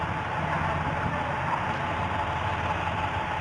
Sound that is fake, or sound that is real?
real